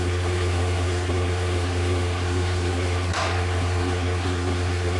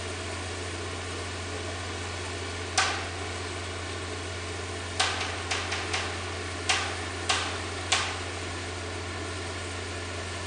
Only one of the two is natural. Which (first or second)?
second